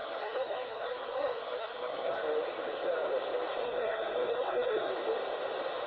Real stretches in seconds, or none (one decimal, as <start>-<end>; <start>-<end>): 2.1-3.6; 4.9-5.9